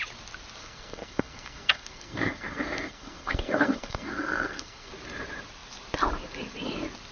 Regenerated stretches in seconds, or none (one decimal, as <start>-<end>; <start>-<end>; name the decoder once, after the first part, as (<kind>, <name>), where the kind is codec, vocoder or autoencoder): 0.6-4.9 (codec, SNAC)